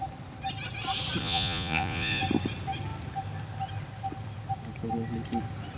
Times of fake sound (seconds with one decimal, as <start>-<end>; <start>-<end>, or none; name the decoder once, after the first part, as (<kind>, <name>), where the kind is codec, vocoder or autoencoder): 1.2-2.2 (vocoder, Vocos)

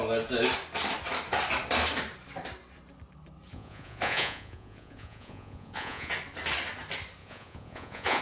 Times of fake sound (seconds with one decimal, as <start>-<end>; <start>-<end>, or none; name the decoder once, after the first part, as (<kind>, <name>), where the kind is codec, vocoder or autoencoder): 3.5-6.1 (vocoder, Vocos); 7.2-8.2

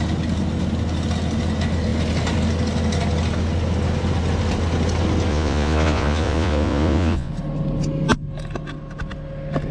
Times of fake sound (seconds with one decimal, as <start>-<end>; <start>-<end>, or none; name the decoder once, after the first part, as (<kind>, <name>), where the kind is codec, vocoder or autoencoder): 5.3-7.3 (vocoder, Vocos)

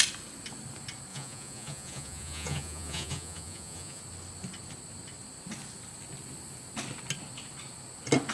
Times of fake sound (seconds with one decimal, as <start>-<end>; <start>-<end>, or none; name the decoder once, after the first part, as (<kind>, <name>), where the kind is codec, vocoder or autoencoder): 1.1-4.0 (vocoder, Vocos)